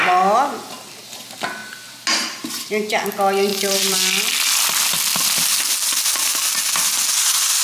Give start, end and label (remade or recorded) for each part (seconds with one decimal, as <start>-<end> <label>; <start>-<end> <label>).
0.0-3.5 recorded; 3.5-5.6 remade; 5.6-7.6 recorded